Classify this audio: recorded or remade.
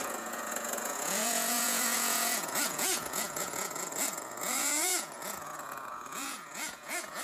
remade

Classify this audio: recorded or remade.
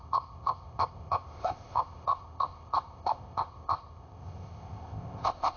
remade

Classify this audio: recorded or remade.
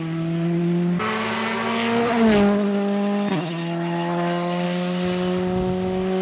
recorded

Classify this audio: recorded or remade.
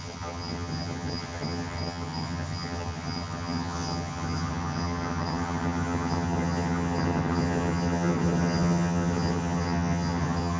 remade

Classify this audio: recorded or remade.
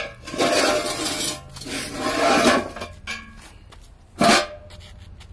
recorded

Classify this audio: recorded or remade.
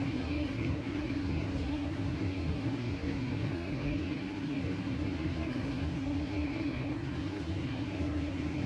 remade